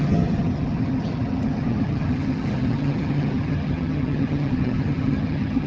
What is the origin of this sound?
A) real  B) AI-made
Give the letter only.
B